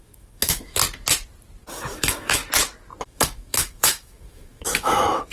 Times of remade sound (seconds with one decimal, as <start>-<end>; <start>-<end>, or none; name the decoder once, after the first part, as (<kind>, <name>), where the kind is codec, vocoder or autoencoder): 0.0-0.8 (autoencoder, DAC-VAE); 1.7-2.4; 3.0-5.3

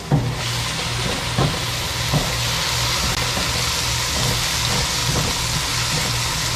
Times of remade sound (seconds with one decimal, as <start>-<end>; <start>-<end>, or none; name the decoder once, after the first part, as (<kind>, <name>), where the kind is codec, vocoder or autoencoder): none

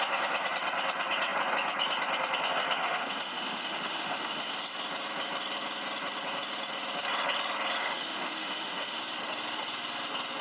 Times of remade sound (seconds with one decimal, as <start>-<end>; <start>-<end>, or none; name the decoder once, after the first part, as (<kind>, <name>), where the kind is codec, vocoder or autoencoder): 2.8-4.5 (autoencoder, DAC-VAE); 7.8-9.0

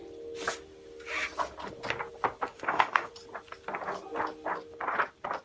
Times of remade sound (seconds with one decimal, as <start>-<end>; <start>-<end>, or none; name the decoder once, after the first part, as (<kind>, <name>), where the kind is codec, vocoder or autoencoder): 2.5-3.1 (autoencoder, DAC-VAE)

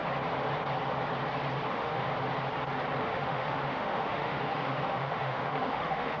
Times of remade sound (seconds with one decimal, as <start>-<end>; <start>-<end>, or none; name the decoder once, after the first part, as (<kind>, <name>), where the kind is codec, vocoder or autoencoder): 1.7-2.1 (autoencoder, DAC-VAE); 3.0-6.2